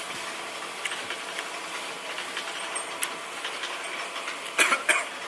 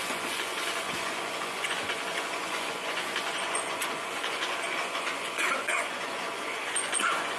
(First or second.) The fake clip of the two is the second